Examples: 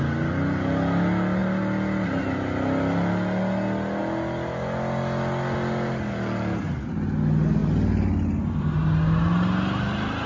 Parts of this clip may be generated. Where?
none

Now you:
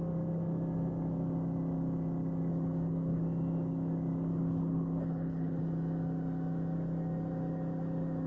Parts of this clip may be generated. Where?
2.5-3.2 (codec, HILCodec); 4.3-5.6

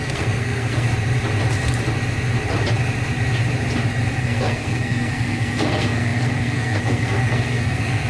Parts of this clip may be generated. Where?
0.0-0.9 (codec, SNAC); 4.2-8.1

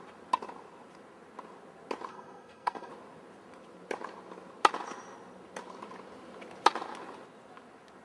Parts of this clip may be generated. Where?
2.1-2.9 (codec, SNAC)

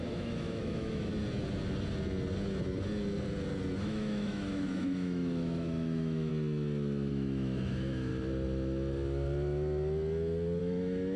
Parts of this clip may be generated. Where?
0.0-1.1 (autoencoder, DAC-VAE); 3.8-6.3; 7.1-8.1; 10.6-11.2

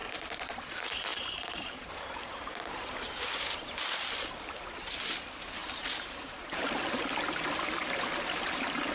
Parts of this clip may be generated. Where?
1.1-3.3 (vocoder, BigVGAN v2); 5.6-6.8